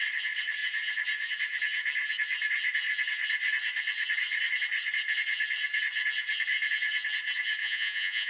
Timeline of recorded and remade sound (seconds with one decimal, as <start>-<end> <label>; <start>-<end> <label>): 0.0-7.6 recorded; 7.6-8.3 remade